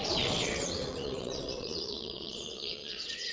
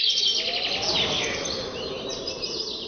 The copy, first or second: first